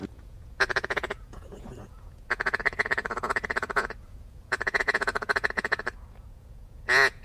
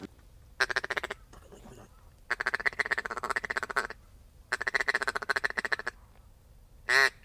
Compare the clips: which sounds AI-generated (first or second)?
first